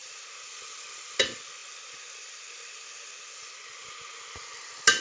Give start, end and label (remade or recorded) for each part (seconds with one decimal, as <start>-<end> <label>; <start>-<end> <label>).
0.0-1.2 remade; 1.2-5.0 recorded